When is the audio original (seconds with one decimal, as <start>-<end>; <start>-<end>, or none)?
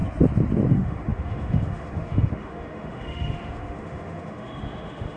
0.0-0.7